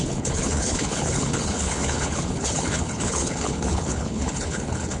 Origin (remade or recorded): remade